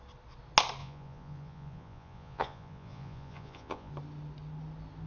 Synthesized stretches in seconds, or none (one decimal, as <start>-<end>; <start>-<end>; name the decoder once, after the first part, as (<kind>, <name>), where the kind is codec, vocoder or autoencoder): 0.8-3.9 (vocoder, Vocos)

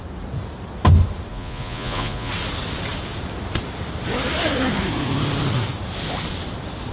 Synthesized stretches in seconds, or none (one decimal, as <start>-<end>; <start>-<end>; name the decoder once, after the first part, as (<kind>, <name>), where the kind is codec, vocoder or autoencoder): 1.3-2.3 (vocoder, Vocos)